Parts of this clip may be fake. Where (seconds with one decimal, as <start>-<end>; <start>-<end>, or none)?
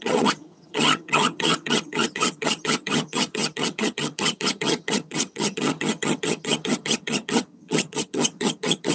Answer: 0.0-8.9